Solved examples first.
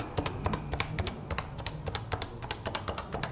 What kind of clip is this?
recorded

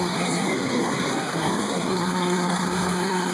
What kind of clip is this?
remade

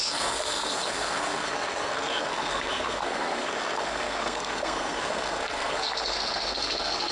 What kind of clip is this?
remade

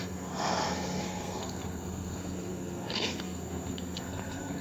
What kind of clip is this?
remade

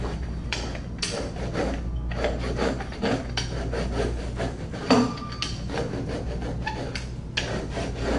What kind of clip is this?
recorded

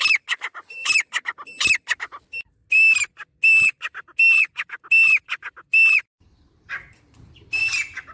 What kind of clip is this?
recorded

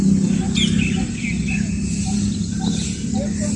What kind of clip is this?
recorded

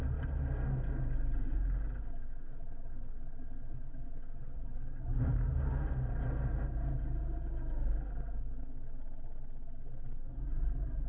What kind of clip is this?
recorded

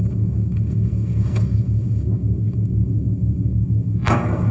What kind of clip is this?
remade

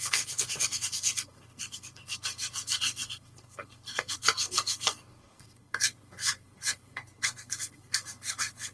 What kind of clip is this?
remade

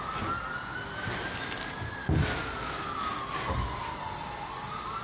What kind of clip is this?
recorded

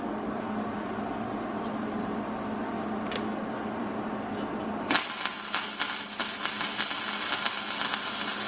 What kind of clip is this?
recorded